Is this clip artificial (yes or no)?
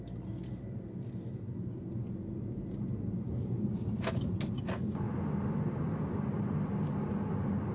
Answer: no